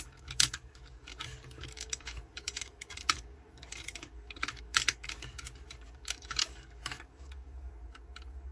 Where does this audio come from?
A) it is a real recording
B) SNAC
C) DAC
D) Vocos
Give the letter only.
C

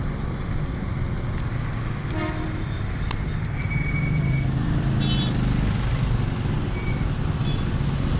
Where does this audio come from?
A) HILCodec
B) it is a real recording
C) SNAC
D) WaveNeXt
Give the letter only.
B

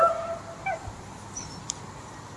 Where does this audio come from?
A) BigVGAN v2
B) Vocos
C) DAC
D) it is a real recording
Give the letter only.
D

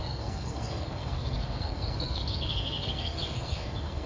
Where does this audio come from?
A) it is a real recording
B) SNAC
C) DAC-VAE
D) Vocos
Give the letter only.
B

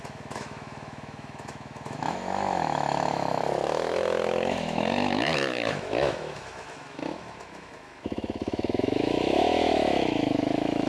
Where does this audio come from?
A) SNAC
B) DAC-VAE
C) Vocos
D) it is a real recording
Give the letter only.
B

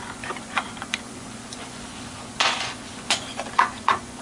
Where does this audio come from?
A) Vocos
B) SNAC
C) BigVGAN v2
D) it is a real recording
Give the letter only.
A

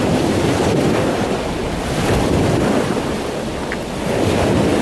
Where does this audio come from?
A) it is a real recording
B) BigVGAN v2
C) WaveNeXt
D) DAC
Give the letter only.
A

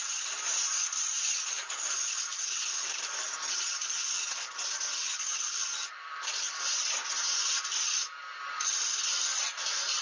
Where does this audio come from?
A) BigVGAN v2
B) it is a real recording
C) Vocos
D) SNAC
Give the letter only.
A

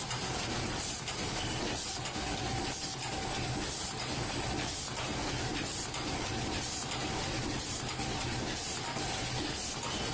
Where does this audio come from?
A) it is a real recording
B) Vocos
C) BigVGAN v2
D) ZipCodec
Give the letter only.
A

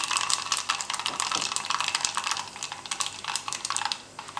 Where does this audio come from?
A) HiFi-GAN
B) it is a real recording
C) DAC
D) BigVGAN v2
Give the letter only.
D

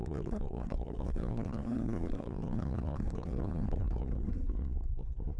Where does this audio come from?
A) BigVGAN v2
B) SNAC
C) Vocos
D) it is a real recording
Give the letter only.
B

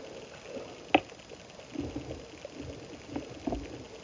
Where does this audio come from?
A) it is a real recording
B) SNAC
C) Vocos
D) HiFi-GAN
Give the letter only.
A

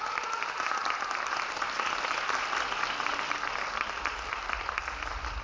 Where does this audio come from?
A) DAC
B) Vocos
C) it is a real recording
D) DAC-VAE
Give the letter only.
C